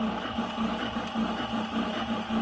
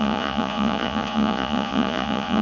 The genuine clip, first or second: first